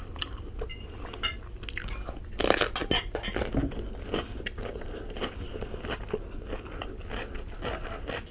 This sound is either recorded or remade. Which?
recorded